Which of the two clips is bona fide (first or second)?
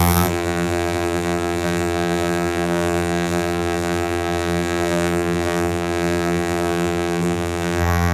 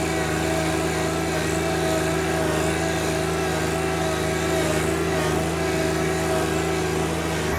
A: second